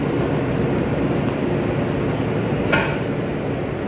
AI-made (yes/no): no